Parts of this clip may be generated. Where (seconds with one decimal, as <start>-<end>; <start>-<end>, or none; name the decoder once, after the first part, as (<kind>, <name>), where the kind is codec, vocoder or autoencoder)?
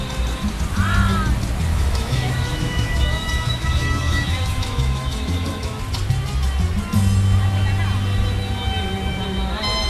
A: 1.7-5.8 (autoencoder, DAC-VAE)